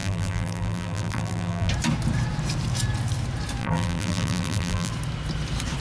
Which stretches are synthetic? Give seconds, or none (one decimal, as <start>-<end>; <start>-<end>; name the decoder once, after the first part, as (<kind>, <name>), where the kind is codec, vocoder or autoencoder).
0.0-1.7 (vocoder, BigVGAN v2); 3.6-4.9

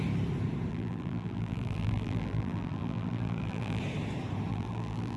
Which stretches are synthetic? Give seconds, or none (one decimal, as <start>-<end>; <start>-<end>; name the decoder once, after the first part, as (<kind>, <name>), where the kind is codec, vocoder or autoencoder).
0.7-3.8 (vocoder, BigVGAN v2); 4.5-5.2

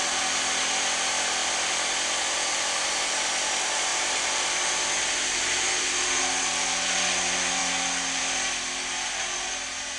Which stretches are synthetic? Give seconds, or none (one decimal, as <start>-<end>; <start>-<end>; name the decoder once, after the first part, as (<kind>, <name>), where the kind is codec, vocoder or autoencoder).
1.4-2.9 (vocoder, BigVGAN v2); 3.9-6.2